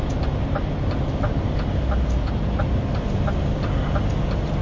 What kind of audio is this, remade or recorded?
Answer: recorded